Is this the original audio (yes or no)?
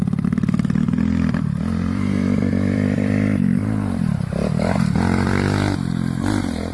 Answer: no